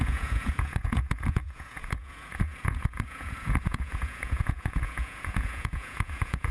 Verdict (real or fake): fake